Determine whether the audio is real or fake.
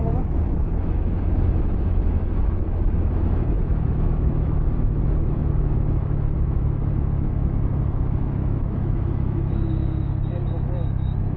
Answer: fake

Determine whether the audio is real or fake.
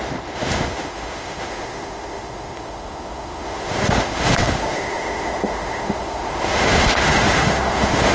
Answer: fake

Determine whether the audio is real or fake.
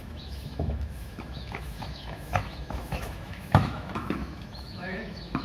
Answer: fake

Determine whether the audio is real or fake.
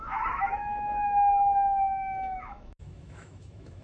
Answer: fake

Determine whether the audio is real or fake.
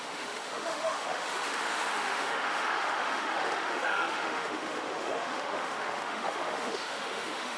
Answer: fake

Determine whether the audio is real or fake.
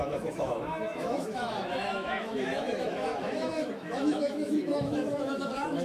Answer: fake